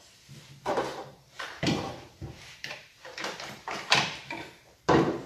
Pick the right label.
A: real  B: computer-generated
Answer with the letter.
B